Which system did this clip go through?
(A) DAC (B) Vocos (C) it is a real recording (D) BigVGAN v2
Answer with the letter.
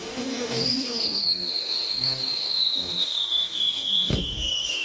A